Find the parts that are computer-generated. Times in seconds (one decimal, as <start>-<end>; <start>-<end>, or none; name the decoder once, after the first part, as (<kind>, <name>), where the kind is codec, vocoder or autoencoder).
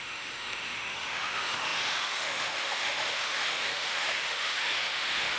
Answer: 0.0-5.4 (autoencoder, DAC-VAE)